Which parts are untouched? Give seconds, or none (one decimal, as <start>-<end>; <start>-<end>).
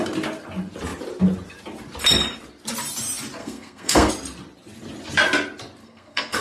0.0-3.4; 4.1-5.8